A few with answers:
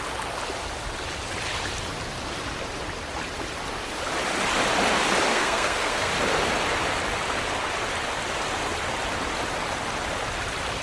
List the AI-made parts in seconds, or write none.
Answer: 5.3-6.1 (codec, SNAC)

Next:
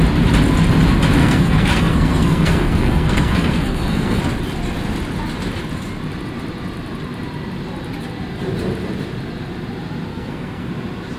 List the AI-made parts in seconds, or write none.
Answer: 1.2-4.2 (codec, SNAC); 10.1-10.7

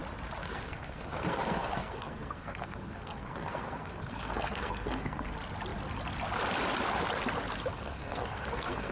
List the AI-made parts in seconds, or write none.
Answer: 0.4-5.2 (codec, SNAC); 7.7-8.9

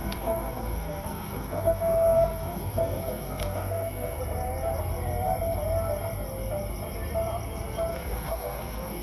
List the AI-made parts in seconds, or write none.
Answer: 0.0-4.2 (codec, SNAC); 7.9-9.0

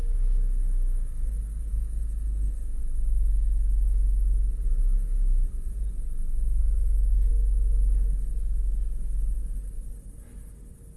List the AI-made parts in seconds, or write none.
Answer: 1.7-2.8 (codec, SNAC); 6.6-7.3

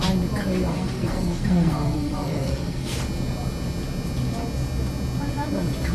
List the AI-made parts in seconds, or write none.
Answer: 0.7-3.0 (codec, SNAC)